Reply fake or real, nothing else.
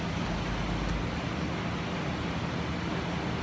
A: real